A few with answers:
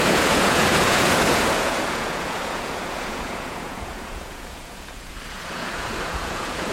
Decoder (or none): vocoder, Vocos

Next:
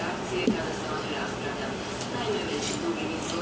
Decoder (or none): none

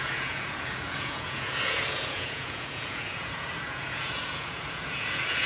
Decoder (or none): vocoder, Vocos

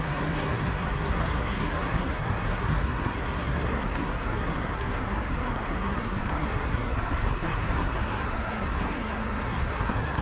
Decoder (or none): codec, SNAC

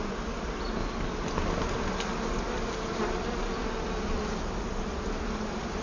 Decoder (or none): none